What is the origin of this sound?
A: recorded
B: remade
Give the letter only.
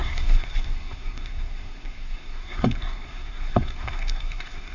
B